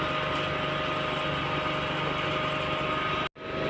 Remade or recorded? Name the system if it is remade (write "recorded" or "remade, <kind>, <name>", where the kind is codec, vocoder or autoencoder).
recorded